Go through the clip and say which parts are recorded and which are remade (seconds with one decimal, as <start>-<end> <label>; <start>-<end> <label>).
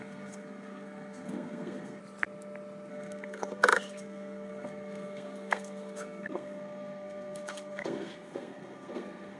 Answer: 0.0-2.0 remade; 2.0-2.9 recorded; 2.9-9.4 remade